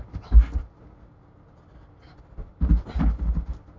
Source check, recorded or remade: recorded